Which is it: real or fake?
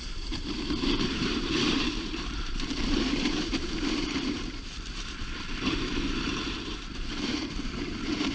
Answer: fake